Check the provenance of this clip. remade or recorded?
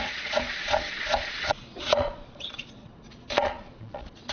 remade